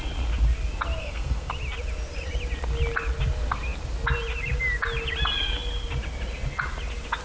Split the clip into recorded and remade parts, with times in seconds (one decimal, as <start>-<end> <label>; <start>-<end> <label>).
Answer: 0.0-1.0 recorded; 1.0-1.5 remade; 1.5-7.2 recorded